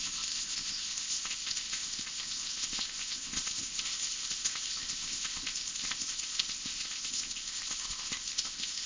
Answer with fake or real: fake